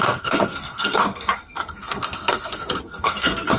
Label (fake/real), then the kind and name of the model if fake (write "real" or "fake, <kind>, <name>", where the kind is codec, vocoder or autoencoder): fake, codec, SNAC